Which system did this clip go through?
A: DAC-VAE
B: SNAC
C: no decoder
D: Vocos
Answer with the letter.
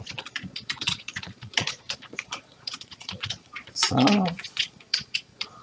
D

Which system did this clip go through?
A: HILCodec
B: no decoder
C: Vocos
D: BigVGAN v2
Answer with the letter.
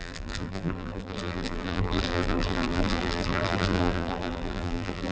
D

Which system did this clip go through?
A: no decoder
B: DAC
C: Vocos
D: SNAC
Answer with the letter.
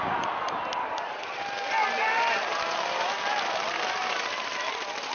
A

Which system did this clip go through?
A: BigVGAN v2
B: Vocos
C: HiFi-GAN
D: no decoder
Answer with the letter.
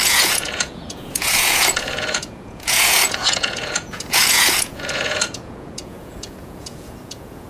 B